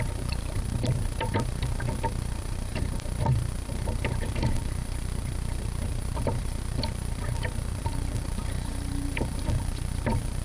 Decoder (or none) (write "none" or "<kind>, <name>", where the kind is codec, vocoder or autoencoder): vocoder, BigVGAN v2